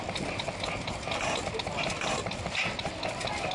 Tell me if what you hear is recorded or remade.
recorded